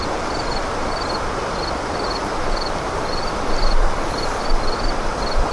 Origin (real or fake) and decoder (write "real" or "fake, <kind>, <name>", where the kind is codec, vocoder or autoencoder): real